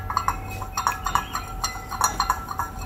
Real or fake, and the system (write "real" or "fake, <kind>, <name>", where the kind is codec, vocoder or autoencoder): real